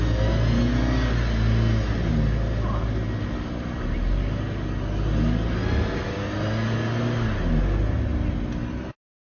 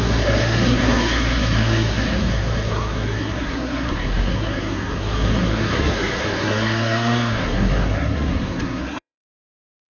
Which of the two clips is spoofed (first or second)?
second